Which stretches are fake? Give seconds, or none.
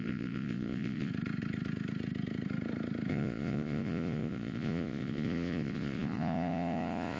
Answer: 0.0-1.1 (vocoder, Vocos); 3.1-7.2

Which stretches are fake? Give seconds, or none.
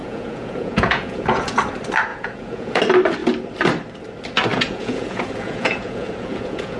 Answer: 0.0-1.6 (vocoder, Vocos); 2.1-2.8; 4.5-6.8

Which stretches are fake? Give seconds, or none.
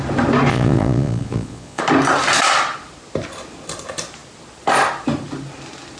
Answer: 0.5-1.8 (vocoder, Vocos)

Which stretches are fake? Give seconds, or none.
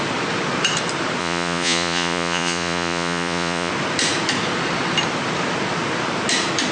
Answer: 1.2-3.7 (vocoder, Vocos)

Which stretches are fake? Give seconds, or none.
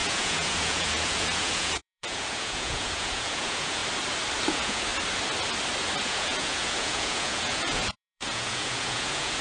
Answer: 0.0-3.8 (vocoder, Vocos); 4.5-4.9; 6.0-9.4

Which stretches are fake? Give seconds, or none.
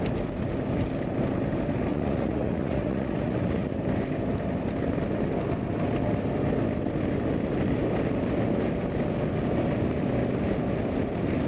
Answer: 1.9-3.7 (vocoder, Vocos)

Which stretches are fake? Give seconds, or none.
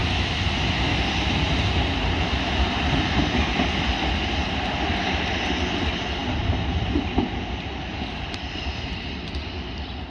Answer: none